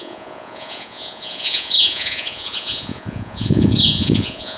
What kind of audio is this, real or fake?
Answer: fake